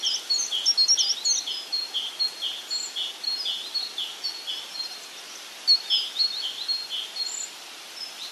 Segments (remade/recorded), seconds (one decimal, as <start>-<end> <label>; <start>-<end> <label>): 0.0-8.3 recorded